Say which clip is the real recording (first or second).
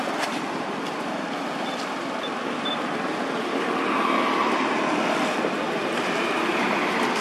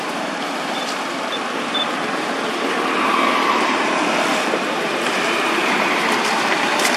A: first